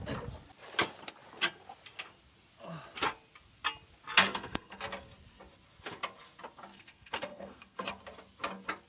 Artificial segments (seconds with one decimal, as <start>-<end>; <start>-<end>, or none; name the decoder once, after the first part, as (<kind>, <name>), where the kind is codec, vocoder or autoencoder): 4.2-4.8 (codec, SNAC); 6.7-7.9